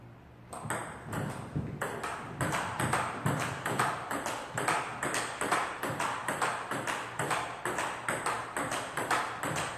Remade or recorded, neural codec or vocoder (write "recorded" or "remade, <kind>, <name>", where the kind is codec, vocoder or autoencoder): recorded